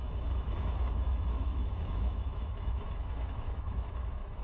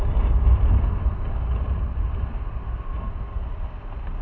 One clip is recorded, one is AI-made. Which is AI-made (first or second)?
first